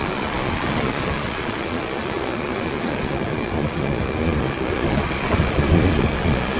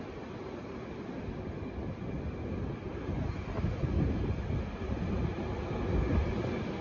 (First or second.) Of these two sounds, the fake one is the first